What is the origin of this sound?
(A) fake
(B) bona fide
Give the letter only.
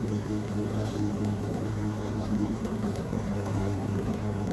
A